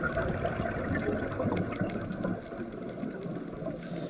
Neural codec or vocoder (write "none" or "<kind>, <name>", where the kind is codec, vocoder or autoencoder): none